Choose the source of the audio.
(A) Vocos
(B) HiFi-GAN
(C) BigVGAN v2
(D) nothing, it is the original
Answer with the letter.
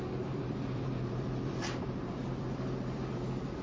C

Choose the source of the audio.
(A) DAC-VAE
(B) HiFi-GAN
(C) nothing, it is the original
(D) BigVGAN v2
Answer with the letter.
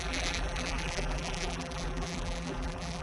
D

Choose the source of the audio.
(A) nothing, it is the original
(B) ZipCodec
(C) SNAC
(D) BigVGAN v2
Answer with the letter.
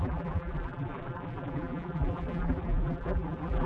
D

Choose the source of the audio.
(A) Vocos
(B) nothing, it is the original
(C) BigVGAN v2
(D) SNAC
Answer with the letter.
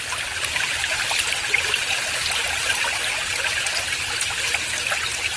B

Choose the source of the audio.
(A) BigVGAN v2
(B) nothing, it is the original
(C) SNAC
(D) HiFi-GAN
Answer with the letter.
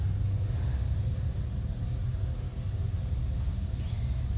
B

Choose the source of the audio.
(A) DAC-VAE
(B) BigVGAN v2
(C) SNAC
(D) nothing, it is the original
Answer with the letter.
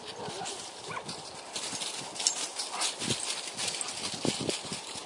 B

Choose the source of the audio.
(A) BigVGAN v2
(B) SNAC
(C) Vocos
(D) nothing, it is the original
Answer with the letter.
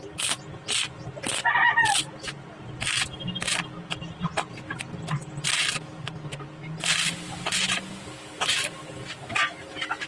D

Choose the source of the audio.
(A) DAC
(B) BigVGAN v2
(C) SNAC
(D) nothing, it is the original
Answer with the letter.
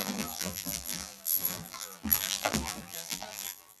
B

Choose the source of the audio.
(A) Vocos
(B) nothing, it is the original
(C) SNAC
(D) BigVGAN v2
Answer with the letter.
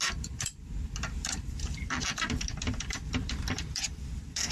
D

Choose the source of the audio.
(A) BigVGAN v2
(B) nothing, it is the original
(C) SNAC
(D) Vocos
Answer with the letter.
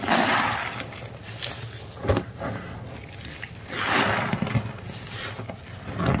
B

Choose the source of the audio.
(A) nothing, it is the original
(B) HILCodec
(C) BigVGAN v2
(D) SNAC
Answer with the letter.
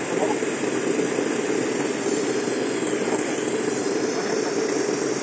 A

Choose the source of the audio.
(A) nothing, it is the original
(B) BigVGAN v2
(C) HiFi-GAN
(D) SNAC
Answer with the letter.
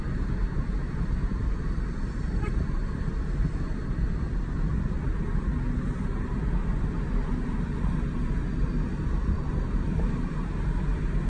A